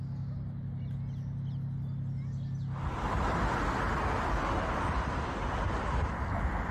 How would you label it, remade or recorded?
recorded